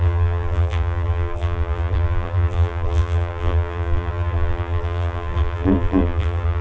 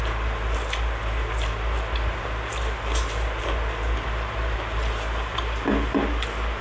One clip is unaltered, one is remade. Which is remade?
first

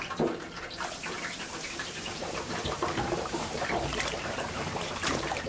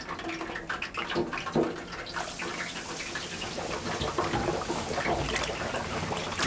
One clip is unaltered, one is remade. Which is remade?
first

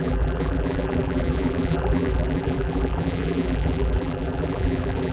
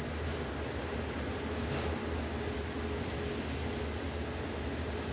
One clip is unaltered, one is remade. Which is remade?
first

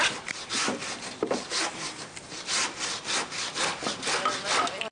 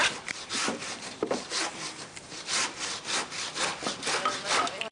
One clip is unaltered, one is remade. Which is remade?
second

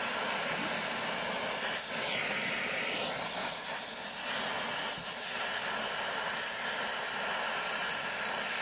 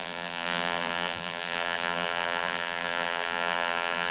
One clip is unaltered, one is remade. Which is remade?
second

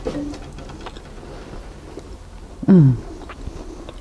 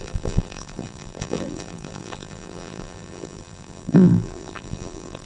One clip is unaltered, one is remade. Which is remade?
second